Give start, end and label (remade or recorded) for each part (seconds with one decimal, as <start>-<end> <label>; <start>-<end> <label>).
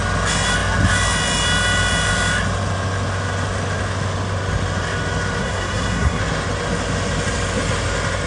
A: 0.0-5.4 recorded; 5.4-6.2 remade; 6.2-8.3 recorded